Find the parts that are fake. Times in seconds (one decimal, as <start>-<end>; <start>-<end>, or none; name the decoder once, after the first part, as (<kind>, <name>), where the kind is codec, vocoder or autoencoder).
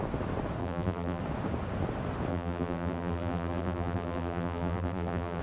0.6-1.2 (vocoder, BigVGAN v2); 2.3-5.4